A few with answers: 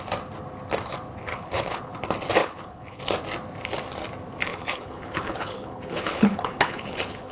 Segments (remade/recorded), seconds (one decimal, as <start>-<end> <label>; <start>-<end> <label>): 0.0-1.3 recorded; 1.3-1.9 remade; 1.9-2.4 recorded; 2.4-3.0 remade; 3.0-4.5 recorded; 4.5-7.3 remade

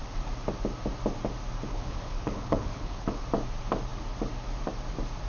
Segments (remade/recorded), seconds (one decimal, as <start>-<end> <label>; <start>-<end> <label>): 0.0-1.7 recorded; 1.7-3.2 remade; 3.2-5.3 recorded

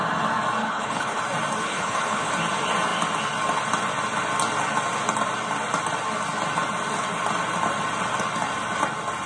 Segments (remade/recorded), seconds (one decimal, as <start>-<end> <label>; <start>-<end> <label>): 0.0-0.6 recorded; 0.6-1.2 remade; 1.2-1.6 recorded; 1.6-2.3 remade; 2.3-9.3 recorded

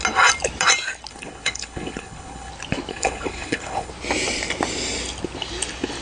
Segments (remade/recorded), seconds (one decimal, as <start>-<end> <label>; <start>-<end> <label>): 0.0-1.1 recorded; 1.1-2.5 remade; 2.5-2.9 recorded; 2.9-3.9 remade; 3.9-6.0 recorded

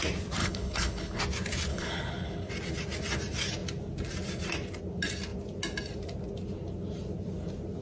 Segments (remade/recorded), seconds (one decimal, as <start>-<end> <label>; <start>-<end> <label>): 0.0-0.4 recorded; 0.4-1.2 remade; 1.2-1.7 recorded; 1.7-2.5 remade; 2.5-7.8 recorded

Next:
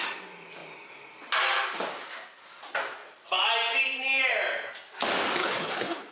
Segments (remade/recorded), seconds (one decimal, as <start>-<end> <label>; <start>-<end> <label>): 0.0-5.4 recorded; 5.4-6.1 remade

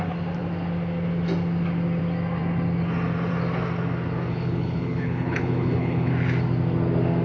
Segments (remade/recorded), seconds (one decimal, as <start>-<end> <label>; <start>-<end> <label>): 0.0-4.3 recorded; 4.3-6.1 remade; 6.1-7.2 recorded

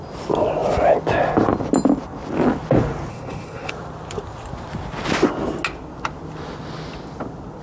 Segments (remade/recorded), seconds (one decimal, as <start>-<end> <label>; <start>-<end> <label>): 0.0-3.1 recorded; 3.1-3.7 remade; 3.7-7.6 recorded